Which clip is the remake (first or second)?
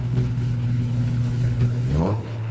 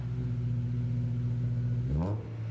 first